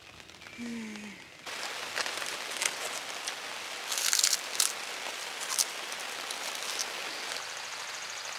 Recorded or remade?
recorded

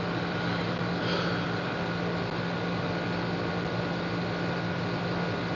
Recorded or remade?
recorded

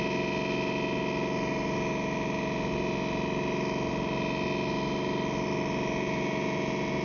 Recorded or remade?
recorded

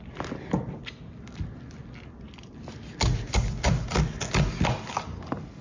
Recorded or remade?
recorded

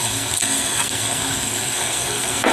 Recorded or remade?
remade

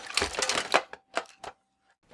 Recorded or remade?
recorded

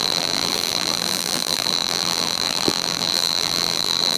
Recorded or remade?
remade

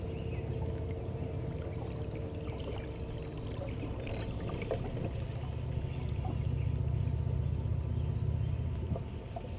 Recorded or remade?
recorded